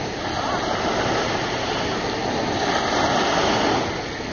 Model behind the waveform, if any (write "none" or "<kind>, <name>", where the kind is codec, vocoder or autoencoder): none